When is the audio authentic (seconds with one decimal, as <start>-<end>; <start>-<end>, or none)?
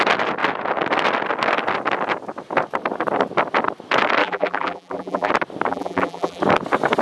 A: 0.0-4.2; 5.3-5.7; 6.4-7.0